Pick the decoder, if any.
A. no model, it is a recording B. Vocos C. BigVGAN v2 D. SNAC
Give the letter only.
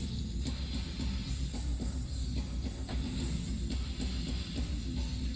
A